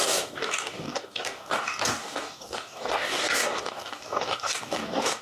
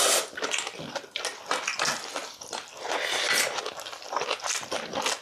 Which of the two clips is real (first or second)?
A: second